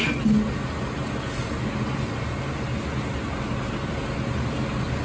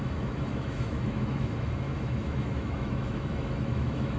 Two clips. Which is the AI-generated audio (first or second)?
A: second